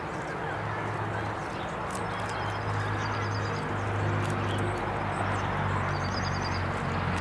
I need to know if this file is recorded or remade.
recorded